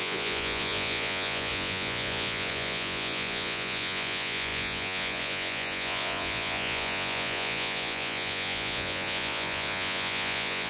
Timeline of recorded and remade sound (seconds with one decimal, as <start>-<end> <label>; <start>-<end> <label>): 0.0-10.7 remade